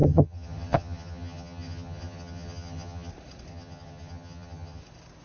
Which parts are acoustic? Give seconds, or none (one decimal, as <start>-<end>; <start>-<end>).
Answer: 3.1-3.5; 4.8-5.2